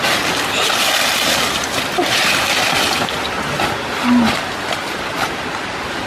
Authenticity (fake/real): fake